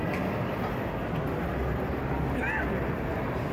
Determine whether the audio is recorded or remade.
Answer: recorded